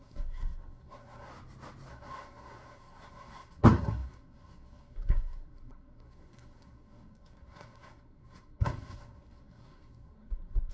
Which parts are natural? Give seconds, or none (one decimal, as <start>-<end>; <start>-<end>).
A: 1.3-1.9